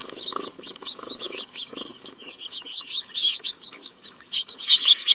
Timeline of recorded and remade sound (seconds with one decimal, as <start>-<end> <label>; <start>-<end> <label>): 0.0-5.1 remade